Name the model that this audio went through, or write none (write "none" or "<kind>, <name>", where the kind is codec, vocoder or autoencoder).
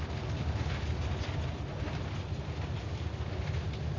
none